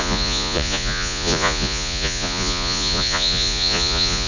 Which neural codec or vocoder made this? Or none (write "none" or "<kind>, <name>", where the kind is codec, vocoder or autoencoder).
vocoder, Vocos